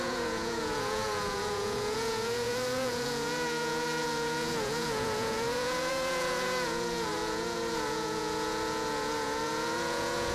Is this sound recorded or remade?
remade